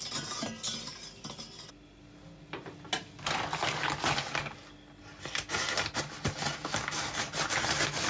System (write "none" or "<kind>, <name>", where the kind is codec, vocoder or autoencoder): none